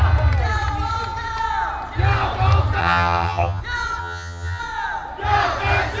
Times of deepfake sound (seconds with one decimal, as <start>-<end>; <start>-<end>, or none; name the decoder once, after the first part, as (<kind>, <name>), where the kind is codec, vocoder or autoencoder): 2.8-3.6 (vocoder, HiFi-GAN); 4.0-4.6